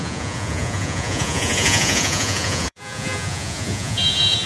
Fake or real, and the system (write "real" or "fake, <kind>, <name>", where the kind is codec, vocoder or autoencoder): fake, vocoder, Vocos